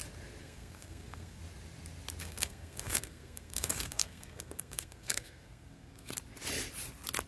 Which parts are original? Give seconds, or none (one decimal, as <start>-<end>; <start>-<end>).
0.0-0.4; 1.4-2.2; 6.1-7.3